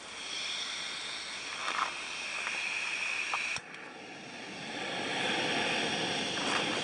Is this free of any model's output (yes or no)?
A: yes